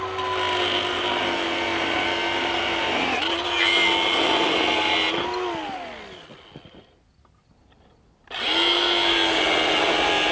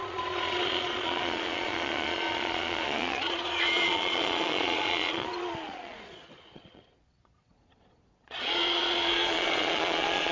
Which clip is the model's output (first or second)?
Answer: second